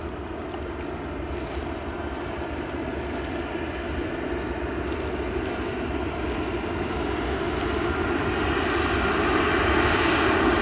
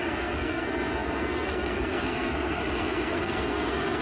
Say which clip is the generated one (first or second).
second